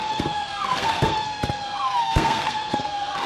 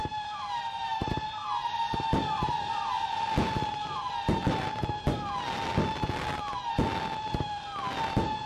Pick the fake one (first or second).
first